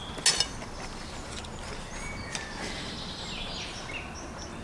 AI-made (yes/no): no